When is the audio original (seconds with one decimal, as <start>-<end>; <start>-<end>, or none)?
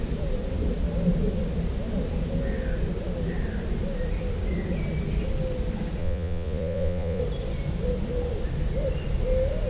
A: 0.0-6.0; 7.2-9.7